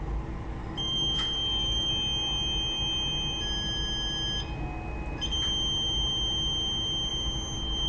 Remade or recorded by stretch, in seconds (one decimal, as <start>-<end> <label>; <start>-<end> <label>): 0.0-0.6 recorded; 0.6-1.9 remade; 1.9-7.9 recorded